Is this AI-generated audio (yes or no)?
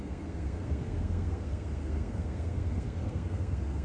yes